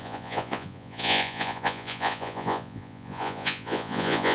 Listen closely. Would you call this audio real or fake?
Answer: fake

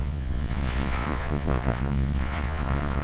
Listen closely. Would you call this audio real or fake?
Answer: fake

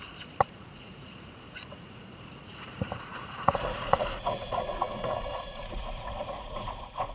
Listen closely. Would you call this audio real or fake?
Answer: fake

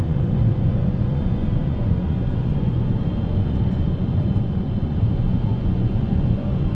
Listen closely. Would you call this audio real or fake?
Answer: fake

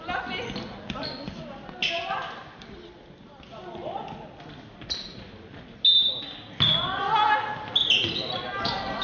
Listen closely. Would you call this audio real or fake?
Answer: real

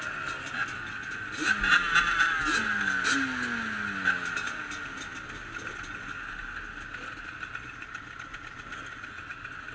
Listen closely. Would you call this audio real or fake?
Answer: real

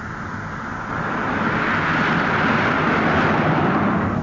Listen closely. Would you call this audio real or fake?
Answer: real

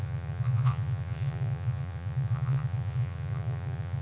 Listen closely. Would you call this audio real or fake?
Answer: fake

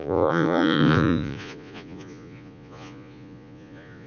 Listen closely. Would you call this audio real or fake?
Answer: fake